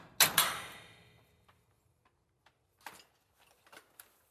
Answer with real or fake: real